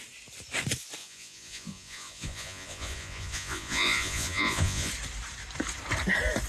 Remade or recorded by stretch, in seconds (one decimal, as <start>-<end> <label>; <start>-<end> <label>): 0.0-1.0 recorded; 1.0-4.9 remade; 4.9-6.5 recorded